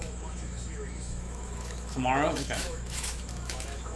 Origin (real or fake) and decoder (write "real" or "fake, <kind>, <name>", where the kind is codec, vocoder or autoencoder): fake, autoencoder, DAC-VAE